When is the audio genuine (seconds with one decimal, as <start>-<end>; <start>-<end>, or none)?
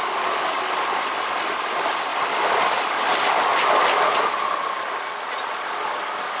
0.0-6.4